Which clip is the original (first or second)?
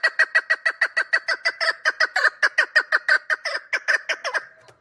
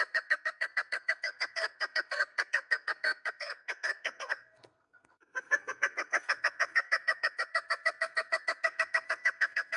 first